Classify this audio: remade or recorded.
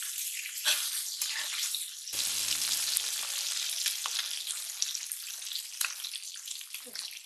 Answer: recorded